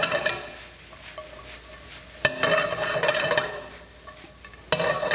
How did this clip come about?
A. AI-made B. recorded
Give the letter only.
B